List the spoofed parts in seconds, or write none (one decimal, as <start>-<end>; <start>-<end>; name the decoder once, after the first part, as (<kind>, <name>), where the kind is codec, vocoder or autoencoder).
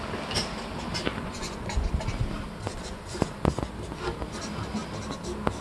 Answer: 1.1-1.9 (vocoder, Vocos); 2.7-3.7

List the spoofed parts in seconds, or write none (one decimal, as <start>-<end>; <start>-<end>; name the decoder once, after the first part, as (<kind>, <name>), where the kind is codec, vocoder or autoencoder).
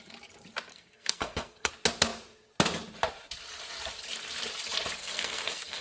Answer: 0.7-1.7 (codec, SNAC); 5.0-5.8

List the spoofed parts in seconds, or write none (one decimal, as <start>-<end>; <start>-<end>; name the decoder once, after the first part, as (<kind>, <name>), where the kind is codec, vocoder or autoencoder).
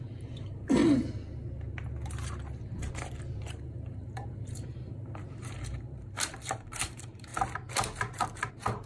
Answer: 0.0-0.8 (vocoder, BigVGAN v2); 3.4-7.3; 8.5-8.9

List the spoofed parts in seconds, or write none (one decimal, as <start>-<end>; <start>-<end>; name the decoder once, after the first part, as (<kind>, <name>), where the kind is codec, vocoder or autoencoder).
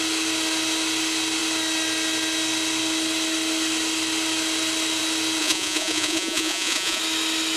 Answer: 5.4-7.0 (vocoder, Vocos)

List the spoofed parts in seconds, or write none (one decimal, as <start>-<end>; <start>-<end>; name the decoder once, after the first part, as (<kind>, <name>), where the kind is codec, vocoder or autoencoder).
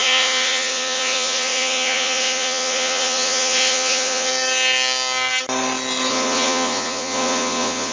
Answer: 0.0-4.3 (vocoder, Vocos); 6.1-7.9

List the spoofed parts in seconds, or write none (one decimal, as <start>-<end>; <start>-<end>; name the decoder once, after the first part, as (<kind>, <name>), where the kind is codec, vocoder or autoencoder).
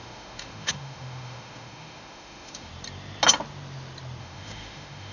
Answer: 0.0-2.7 (autoencoder, DAC-VAE); 4.2-5.1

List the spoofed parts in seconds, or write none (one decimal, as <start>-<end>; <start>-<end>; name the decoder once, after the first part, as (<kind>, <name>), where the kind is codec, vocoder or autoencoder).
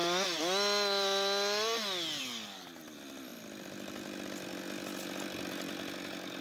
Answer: none